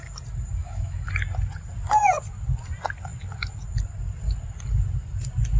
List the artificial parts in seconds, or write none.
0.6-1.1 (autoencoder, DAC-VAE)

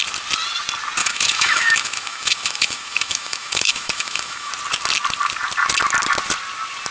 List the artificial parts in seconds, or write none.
1.0-4.5 (autoencoder, DAC-VAE)